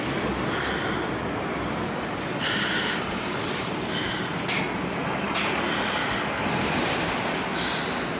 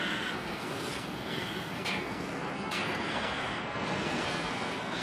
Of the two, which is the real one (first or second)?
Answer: first